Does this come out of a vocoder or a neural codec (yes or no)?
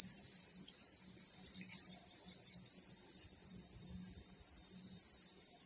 yes